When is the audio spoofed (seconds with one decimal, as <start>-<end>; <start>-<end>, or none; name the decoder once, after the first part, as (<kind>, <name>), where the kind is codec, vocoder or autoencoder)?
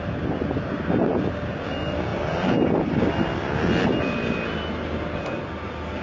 none